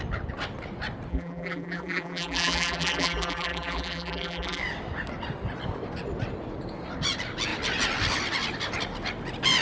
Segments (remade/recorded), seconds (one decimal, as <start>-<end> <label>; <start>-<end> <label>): 0.0-1.1 recorded; 1.1-4.6 remade; 4.6-9.6 recorded